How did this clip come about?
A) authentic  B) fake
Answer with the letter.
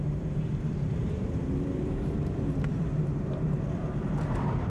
B